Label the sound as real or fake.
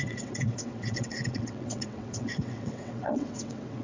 fake